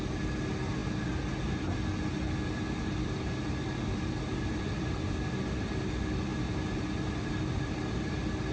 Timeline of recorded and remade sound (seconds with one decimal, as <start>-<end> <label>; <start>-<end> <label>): 0.0-8.5 recorded